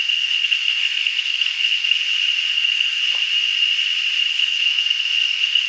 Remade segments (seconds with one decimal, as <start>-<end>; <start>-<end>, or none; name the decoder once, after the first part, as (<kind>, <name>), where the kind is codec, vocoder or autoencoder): 0.0-2.0 (codec, SNAC); 2.5-3.0; 4.3-5.7